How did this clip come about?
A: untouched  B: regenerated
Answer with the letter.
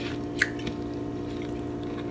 A